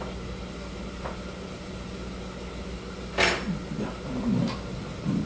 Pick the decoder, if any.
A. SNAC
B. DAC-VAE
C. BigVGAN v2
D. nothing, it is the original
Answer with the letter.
D